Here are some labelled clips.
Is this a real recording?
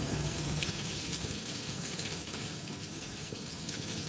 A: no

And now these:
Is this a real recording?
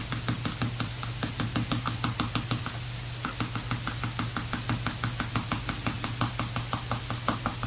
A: yes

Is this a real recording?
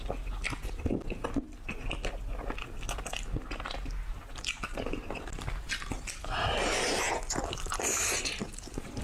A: yes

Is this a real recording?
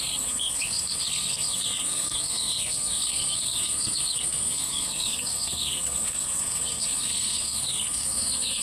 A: no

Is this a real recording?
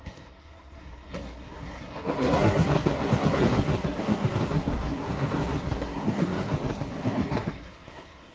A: no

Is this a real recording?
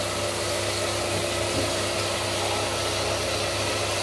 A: yes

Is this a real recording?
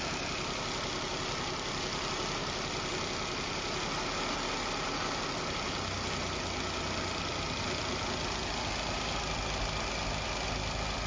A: yes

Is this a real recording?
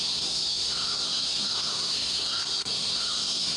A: no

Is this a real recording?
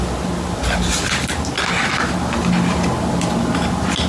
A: yes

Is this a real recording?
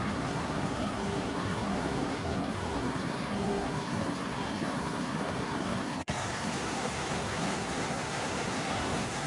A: no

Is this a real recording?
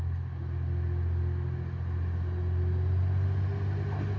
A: yes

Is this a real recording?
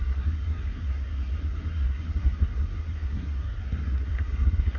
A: no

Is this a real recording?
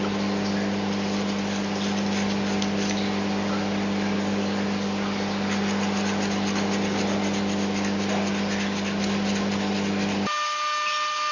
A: yes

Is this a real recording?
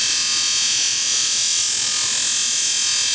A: yes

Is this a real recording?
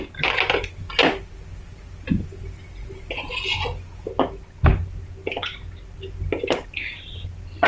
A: yes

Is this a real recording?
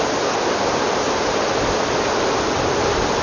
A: yes